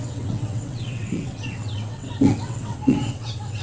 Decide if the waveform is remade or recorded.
remade